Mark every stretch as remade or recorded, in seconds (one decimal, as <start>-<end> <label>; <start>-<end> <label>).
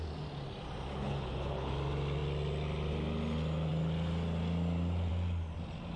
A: 0.0-0.9 recorded; 0.9-1.7 remade; 1.7-6.0 recorded